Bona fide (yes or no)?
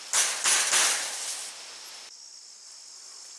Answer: yes